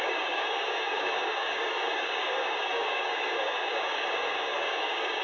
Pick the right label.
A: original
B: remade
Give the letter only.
B